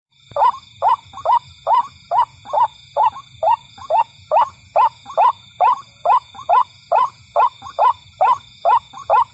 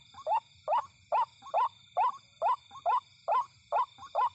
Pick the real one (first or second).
second